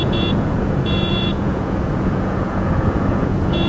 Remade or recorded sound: remade